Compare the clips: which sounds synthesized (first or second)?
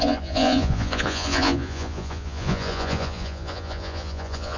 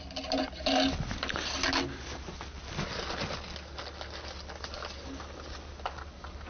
first